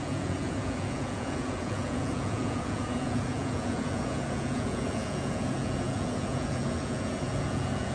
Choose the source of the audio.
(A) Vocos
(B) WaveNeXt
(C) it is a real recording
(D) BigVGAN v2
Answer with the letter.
A